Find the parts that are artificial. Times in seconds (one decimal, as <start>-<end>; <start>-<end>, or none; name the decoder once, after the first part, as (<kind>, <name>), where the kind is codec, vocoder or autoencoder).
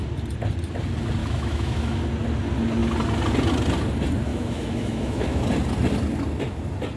1.2-2.0 (autoencoder, DAC-VAE); 4.3-5.4